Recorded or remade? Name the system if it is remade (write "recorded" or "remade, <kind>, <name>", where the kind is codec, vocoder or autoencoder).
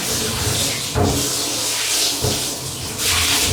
recorded